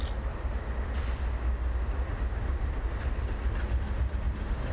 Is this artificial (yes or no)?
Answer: no